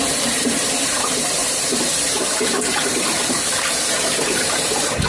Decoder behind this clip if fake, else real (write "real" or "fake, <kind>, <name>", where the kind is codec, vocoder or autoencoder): fake, vocoder, BigVGAN v2